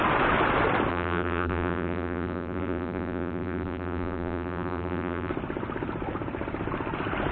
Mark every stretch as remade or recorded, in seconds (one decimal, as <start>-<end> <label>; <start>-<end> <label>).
0.0-0.9 recorded; 0.9-5.3 remade; 5.3-7.3 recorded